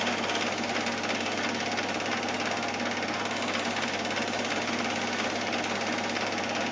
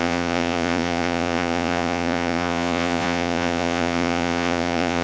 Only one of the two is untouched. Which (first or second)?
first